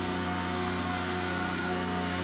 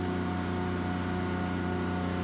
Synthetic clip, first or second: first